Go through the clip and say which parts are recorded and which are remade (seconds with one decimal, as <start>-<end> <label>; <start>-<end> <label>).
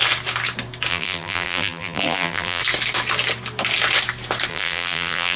0.0-0.9 recorded; 0.9-2.6 remade; 2.6-4.5 recorded; 4.5-5.4 remade